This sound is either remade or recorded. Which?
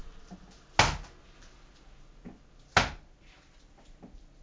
recorded